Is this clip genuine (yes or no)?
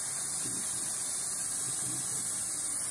yes